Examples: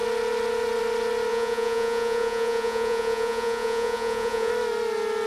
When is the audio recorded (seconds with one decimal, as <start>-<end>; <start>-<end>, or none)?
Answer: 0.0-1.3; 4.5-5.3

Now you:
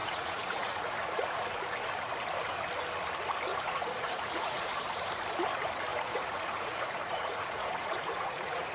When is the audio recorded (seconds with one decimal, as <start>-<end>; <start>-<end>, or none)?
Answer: 1.4-3.5; 4.7-5.9

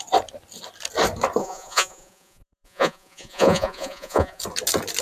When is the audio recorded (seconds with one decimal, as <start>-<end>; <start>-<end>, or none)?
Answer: 0.0-1.4; 4.4-5.0

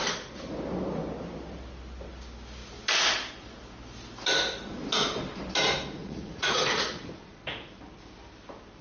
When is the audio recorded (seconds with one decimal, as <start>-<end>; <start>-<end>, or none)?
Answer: 0.0-6.0; 7.4-8.8